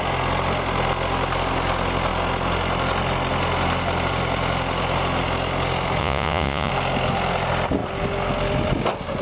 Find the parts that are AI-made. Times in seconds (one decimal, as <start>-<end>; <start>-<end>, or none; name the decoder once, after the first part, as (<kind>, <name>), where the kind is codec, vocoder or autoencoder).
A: 6.0-6.7 (vocoder, Vocos)